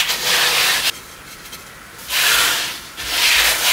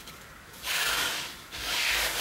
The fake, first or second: second